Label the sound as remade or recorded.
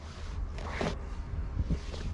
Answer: recorded